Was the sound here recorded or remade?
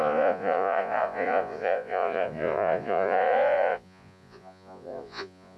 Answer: remade